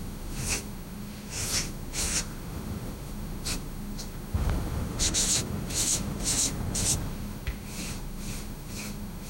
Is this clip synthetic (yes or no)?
yes